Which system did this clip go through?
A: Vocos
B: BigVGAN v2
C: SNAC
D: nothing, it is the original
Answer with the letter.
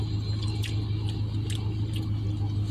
D